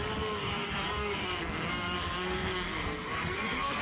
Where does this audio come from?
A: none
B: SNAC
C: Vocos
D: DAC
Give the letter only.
B